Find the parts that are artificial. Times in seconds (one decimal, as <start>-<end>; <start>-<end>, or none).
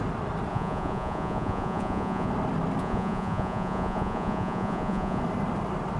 0.5-2.3; 2.8-5.2